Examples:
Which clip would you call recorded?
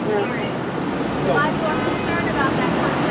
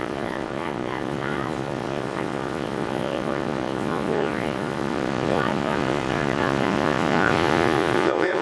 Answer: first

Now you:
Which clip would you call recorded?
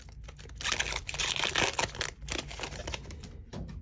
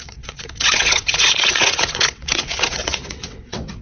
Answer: first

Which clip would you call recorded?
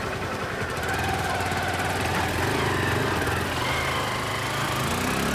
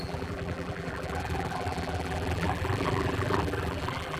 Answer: first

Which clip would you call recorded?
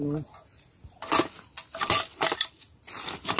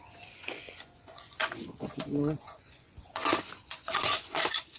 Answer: first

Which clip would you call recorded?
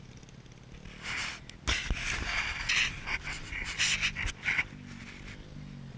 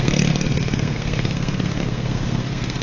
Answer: first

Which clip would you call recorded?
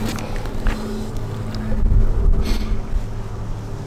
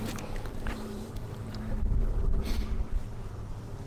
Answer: first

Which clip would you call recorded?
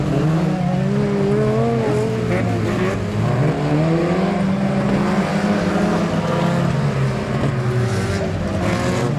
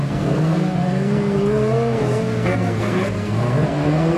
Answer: first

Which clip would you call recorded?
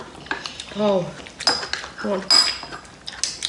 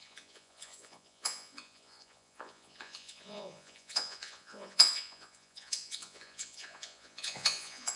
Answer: first